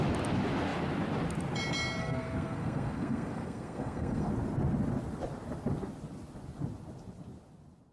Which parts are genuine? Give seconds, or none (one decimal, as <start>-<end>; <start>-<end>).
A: 0.0-2.0; 4.3-7.9